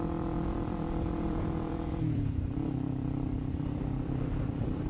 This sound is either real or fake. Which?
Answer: fake